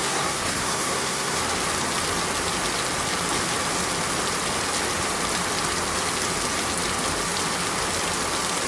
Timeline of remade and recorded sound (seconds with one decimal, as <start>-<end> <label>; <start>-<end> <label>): 0.0-1.4 remade; 1.4-8.7 recorded